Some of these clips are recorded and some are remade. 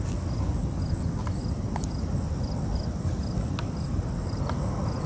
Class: recorded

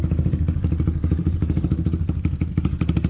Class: remade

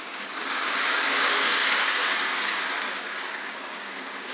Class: remade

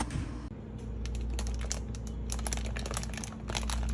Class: recorded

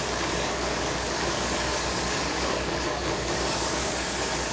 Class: remade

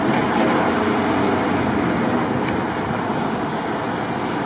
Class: recorded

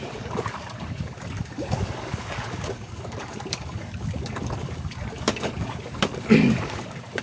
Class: remade